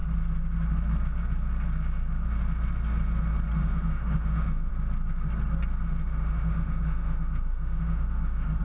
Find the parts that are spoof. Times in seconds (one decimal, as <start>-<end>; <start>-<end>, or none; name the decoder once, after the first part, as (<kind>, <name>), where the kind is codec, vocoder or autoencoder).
3.6-4.7 (autoencoder, DAC-VAE); 6.0-8.6